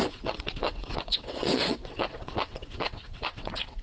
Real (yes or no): no